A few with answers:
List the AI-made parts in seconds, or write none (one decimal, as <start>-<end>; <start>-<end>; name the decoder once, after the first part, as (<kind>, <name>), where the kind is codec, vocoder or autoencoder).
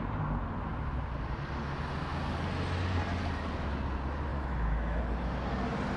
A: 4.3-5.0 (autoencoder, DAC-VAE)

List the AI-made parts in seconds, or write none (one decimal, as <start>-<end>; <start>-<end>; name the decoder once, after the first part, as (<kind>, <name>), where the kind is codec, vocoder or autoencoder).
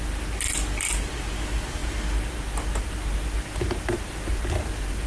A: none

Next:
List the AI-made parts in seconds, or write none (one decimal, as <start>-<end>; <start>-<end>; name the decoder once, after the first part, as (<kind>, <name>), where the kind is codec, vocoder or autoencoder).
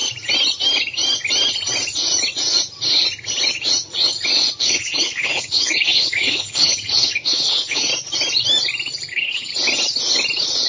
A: 4.6-7.9 (codec, HILCodec); 9.1-9.5